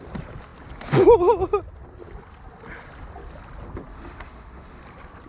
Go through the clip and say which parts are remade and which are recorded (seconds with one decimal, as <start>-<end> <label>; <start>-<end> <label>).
0.0-3.9 recorded; 3.9-4.8 remade; 4.8-5.3 recorded